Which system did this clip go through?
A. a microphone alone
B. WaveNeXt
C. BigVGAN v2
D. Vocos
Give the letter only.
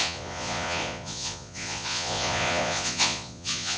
D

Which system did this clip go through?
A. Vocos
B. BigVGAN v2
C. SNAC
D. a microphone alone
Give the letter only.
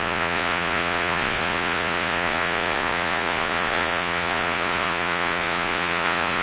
A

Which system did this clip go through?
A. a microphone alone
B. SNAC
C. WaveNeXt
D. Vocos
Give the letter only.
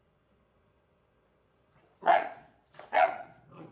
D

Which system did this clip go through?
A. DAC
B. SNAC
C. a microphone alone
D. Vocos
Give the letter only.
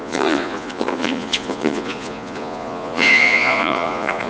D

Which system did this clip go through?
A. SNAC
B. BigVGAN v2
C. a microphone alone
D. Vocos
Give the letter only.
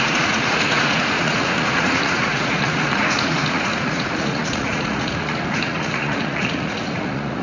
D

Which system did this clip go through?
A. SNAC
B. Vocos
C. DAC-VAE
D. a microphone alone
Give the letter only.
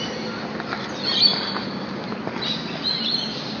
D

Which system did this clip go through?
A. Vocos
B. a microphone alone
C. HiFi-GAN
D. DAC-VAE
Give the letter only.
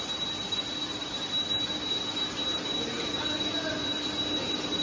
B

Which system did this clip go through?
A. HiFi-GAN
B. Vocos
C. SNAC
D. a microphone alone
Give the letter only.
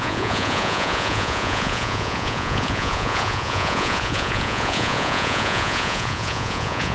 B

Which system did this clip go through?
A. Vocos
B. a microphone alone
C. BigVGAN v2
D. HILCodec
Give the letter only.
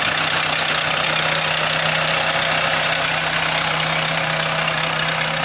B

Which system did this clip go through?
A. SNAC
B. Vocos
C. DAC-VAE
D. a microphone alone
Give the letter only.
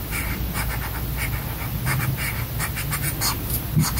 D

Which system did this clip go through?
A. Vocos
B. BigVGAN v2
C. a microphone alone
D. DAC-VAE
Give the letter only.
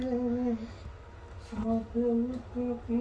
C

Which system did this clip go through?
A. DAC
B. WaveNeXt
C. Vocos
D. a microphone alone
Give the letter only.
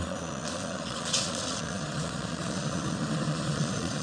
C